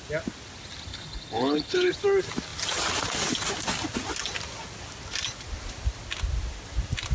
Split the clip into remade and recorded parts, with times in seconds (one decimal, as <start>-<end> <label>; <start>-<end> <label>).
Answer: 0.0-0.9 recorded; 0.9-1.9 remade; 1.9-7.1 recorded